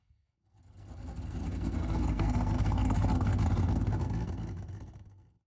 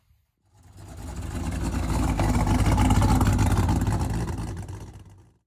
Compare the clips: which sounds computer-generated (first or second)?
first